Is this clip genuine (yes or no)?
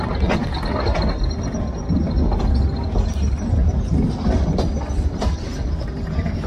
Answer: yes